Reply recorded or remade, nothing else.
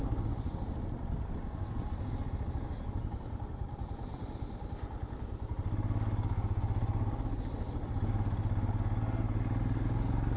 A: recorded